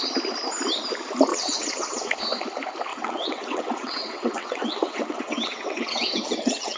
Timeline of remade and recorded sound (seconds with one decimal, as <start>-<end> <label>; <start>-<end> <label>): 0.0-1.3 recorded; 1.3-2.1 remade; 2.1-2.9 recorded; 2.9-6.8 remade